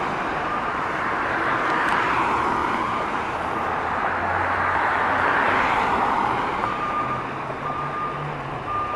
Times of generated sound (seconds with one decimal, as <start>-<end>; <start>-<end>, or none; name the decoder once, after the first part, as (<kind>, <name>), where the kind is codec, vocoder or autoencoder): 6.6-8.1 (vocoder, BigVGAN v2)